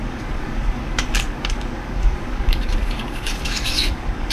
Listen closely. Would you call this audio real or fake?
fake